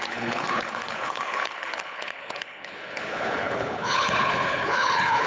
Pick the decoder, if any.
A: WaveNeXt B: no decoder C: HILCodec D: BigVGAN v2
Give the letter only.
C